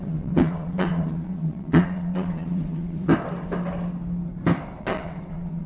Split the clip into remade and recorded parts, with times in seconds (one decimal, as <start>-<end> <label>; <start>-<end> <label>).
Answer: 0.0-3.1 remade; 3.1-4.8 recorded; 4.8-5.7 remade